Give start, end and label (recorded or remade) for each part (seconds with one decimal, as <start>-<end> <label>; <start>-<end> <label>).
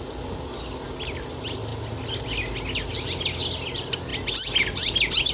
0.0-5.3 recorded